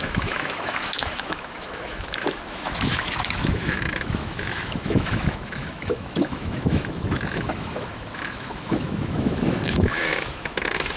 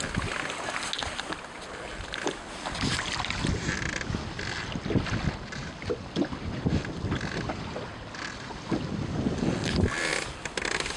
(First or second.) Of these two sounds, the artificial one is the first